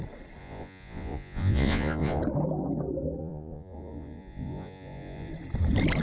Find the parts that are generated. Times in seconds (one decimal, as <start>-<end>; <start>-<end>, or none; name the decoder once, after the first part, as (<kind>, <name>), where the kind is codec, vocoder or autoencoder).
0.4-2.2 (vocoder, Vocos); 3.2-5.3